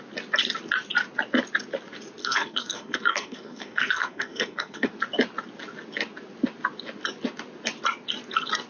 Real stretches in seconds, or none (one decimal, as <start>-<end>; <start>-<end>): 0.0-2.2; 4.9-8.7